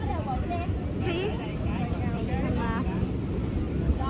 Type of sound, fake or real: real